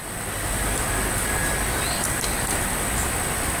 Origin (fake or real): real